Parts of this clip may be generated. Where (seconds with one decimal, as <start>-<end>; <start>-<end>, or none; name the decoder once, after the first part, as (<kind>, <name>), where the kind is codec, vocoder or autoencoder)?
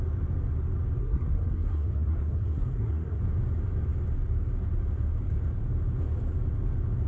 1.0-3.2 (codec, SNAC)